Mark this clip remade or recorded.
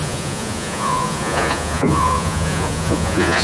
remade